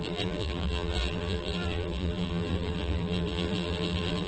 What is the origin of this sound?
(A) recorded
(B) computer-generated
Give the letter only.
B